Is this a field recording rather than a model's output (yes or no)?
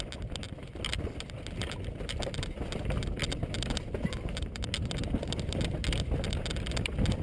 yes